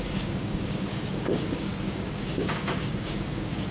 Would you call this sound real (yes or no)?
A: no